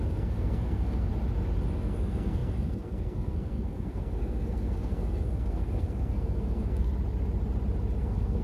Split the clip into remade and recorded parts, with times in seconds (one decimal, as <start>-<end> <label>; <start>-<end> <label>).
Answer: 0.0-1.1 remade; 1.1-1.8 recorded; 1.8-6.9 remade; 6.9-8.0 recorded; 8.0-8.4 remade